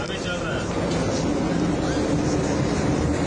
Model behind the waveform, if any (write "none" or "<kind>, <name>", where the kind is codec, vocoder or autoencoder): none